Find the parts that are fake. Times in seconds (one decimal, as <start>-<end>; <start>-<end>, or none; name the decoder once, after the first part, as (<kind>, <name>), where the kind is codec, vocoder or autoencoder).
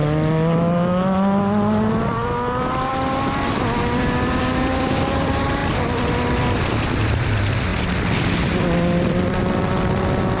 1.9-2.9 (vocoder, BigVGAN v2); 3.8-7.7; 8.6-10.4